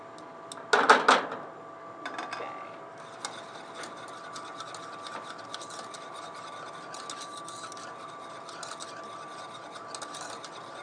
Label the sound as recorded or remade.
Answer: recorded